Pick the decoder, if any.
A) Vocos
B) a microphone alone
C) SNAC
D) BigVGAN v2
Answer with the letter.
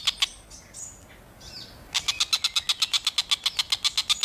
B